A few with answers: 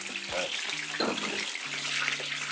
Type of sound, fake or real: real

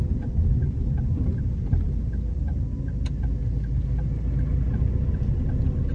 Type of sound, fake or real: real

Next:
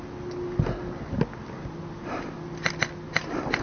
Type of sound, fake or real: real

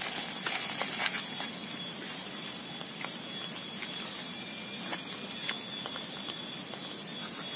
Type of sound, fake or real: real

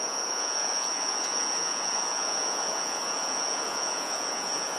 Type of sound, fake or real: fake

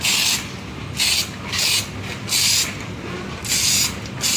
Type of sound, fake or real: real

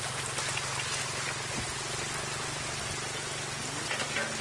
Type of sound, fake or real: real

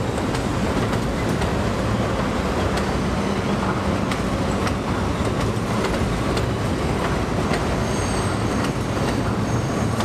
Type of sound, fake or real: real